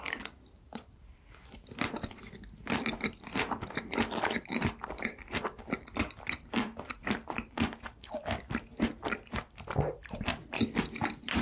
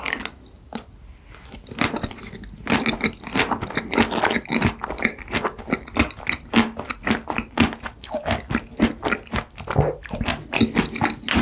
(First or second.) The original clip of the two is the second